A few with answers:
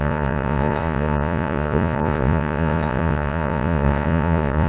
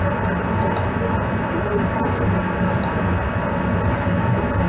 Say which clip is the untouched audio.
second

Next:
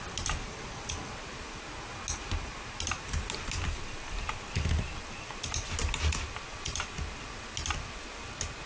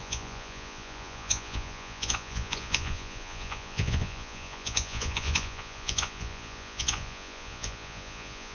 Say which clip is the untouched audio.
first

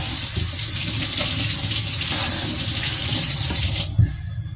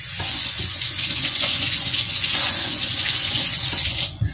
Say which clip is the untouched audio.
first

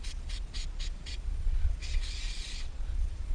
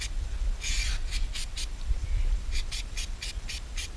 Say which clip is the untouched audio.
second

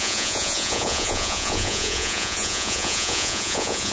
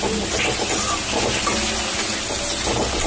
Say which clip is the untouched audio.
second